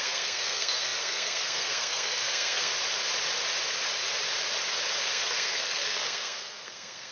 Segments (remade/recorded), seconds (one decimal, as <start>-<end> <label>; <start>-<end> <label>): 0.0-2.7 remade; 2.7-5.0 recorded; 5.0-7.1 remade